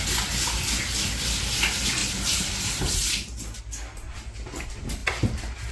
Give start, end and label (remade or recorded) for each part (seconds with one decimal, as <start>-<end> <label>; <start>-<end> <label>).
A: 0.0-2.0 recorded; 2.0-3.6 remade; 3.6-5.7 recorded